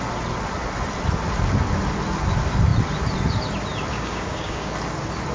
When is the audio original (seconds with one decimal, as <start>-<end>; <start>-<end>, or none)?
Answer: 0.0-3.9; 4.7-5.3